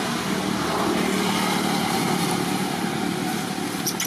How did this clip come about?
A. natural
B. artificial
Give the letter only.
B